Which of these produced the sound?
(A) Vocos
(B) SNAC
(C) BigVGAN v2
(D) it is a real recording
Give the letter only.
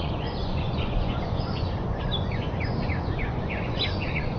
A